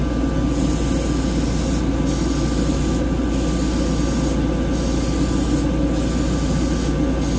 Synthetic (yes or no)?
no